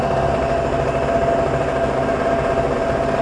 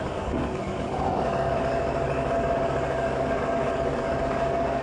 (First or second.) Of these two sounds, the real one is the first